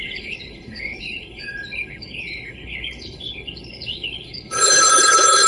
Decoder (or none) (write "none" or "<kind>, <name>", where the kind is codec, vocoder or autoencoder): codec, HILCodec